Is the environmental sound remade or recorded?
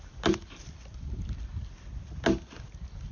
recorded